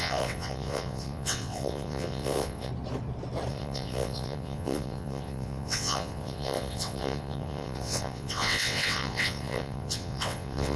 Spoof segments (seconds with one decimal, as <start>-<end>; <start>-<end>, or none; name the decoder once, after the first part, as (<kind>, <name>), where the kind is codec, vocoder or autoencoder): 0.0-2.7 (vocoder, WaveNeXt); 3.5-10.8